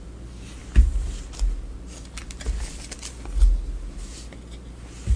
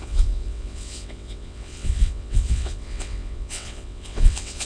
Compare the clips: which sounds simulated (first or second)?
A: second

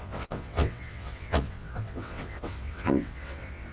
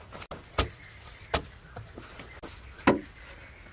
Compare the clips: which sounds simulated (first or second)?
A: first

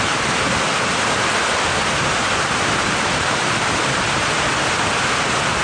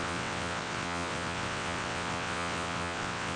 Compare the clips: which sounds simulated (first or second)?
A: second